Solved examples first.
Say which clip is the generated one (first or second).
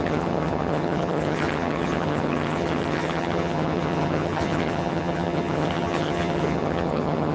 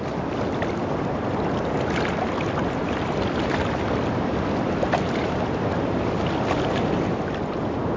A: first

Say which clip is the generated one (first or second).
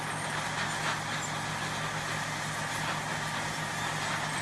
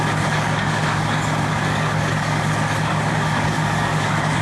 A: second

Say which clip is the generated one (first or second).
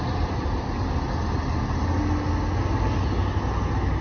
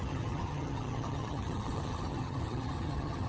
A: second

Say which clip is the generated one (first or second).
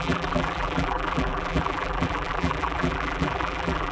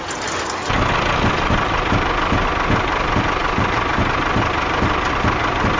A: first